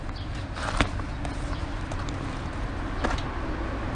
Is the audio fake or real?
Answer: real